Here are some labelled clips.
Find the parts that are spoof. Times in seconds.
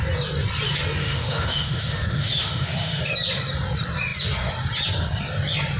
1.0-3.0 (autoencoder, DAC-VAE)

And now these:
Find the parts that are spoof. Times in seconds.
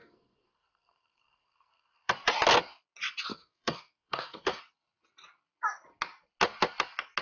0.0-2.1 (codec, SNAC); 3.3-4.6